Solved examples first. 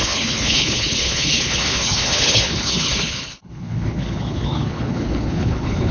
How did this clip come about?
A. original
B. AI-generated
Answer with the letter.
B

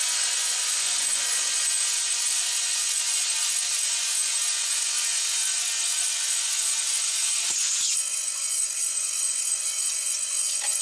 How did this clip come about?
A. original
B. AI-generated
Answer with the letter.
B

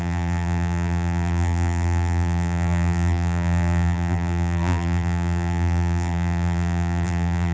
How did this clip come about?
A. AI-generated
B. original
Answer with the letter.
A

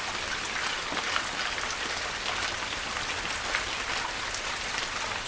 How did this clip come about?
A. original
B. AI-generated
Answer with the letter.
A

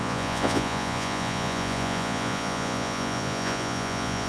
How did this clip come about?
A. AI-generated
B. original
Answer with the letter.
A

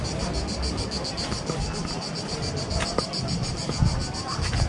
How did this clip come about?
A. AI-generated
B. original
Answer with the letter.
B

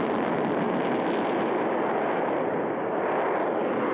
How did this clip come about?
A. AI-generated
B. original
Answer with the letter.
A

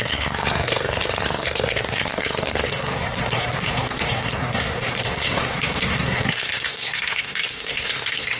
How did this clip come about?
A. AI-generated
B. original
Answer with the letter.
A